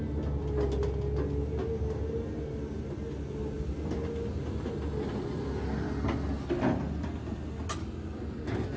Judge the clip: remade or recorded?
recorded